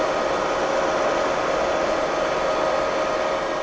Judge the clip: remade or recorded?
recorded